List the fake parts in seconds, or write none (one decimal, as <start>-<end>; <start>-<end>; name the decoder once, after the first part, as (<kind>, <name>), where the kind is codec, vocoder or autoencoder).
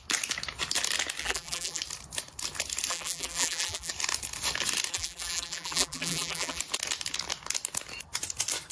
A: 1.2-1.8 (vocoder, BigVGAN v2); 2.9-3.9; 4.9-6.6